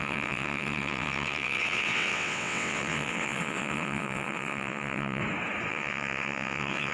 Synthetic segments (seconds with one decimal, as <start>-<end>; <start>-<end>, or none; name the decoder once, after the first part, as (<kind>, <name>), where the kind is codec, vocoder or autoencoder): 0.0-5.2 (vocoder, WaveNeXt); 5.7-6.9